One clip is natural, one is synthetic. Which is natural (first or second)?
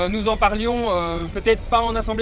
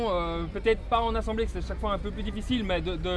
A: second